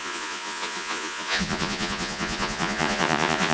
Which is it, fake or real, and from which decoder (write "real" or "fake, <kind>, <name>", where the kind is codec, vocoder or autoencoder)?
fake, vocoder, Vocos